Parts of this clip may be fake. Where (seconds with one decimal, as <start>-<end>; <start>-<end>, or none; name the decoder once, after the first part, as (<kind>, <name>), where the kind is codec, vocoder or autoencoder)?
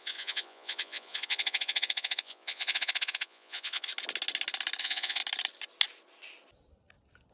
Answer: 0.0-3.9 (vocoder, Vocos); 4.8-5.2